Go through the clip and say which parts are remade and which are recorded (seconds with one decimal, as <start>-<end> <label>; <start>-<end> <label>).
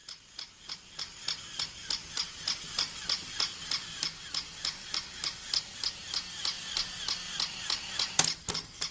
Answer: 0.0-8.9 recorded